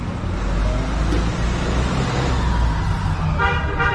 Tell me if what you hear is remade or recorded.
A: recorded